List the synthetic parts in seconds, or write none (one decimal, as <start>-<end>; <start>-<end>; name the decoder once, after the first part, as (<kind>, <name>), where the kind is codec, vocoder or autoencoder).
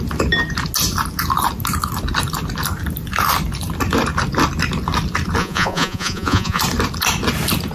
5.4-6.6 (vocoder, Vocos)